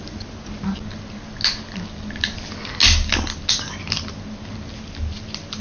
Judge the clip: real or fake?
real